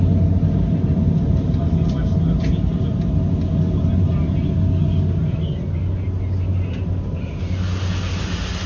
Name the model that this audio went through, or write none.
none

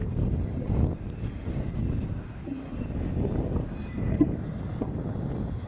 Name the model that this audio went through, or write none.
none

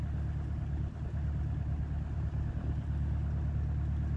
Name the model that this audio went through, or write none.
none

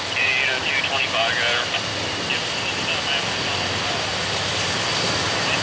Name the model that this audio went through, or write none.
none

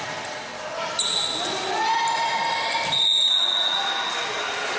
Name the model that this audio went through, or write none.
none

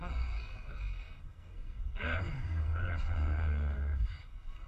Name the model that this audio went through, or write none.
codec, SNAC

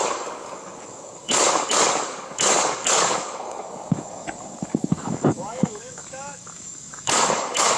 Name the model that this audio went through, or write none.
codec, DAC